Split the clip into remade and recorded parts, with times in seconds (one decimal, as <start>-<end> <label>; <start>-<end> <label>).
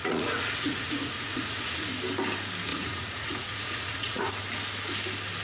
0.0-1.9 remade; 1.9-2.7 recorded; 2.7-4.3 remade; 4.3-5.4 recorded